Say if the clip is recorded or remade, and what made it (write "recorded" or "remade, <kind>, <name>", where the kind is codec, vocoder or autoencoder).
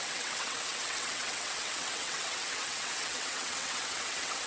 remade, vocoder, WaveNeXt